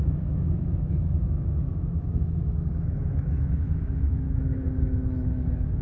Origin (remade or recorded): remade